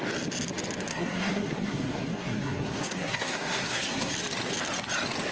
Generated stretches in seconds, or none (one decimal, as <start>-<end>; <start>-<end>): 0.9-4.1